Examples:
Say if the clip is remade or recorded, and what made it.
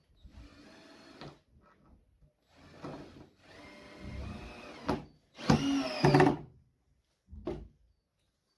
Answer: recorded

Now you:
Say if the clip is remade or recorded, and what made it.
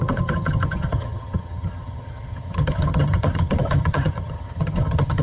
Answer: remade, vocoder, HiFi-GAN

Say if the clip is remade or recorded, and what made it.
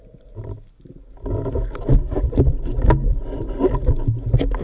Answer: recorded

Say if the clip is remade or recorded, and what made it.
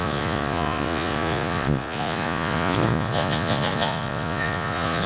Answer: remade, vocoder, Vocos